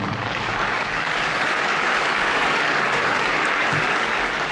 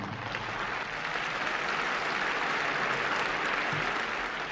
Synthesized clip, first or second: first